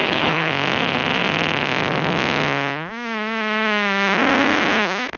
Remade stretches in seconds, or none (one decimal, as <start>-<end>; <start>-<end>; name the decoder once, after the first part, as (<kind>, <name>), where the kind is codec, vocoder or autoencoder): 0.0-0.5 (codec, HILCodec)